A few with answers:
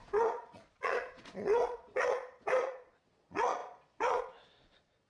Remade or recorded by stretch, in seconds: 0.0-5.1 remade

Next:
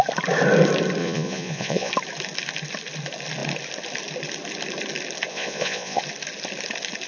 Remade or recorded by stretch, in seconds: 0.0-1.0 recorded; 1.0-1.9 remade; 1.9-5.3 recorded; 5.3-6.0 remade; 6.0-7.1 recorded

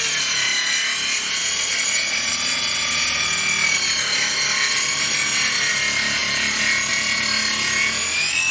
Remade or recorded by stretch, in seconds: 0.0-1.4 recorded; 1.4-2.3 remade; 2.3-8.5 recorded

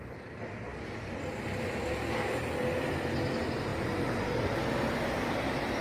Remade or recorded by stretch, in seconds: 0.0-5.8 recorded

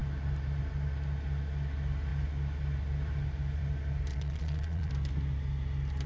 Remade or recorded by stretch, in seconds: 0.0-4.1 recorded; 4.1-4.9 remade; 4.9-6.1 recorded

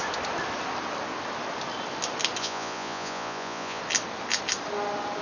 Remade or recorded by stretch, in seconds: 0.0-2.4 recorded; 2.4-3.8 remade; 3.8-5.2 recorded

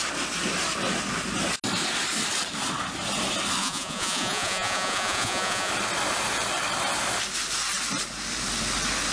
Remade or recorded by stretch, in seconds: 0.0-3.6 recorded; 3.6-5.7 remade; 5.7-9.1 recorded

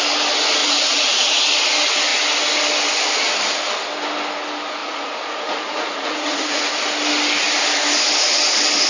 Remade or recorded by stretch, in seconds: 0.0-0.6 recorded; 0.6-1.3 remade; 1.3-4.8 recorded; 4.8-6.7 remade; 6.7-8.9 recorded